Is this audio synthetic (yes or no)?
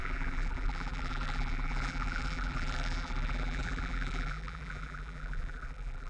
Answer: yes